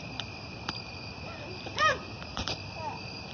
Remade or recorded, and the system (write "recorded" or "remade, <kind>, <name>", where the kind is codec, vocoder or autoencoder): remade, vocoder, BigVGAN v2